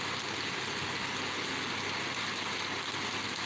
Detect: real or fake real